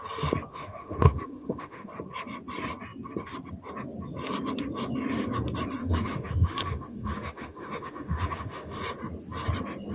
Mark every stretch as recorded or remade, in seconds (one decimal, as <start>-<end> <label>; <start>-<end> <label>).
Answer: 0.0-0.5 recorded; 0.5-1.9 remade; 1.9-5.8 recorded; 5.8-8.8 remade; 8.8-9.9 recorded